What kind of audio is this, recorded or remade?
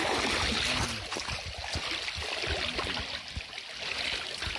recorded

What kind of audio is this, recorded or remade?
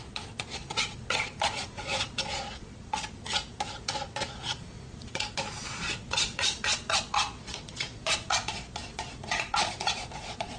remade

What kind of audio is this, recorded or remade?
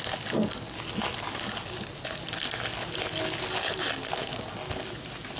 recorded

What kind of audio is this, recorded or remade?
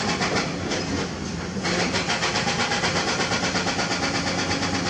recorded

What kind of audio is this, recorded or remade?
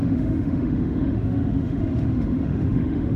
remade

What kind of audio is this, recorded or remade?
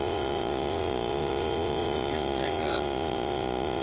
remade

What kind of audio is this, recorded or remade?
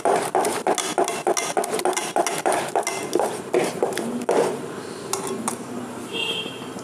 recorded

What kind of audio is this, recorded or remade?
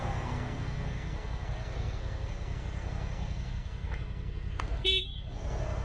remade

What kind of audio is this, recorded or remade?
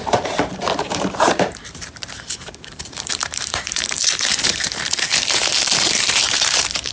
remade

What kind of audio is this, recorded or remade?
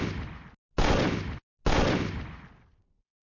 recorded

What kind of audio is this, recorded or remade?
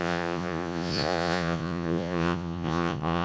remade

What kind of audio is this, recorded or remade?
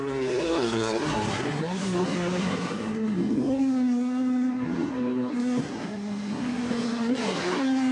remade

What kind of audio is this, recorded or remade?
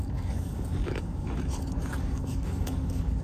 remade